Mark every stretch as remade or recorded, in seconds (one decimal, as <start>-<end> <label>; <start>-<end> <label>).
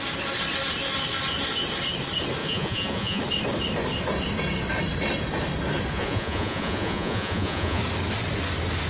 0.0-2.4 recorded; 2.4-3.2 remade; 3.2-5.9 recorded; 5.9-7.8 remade; 7.8-8.9 recorded